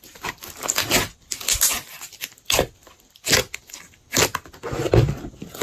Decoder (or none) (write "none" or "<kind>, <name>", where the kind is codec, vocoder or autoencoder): none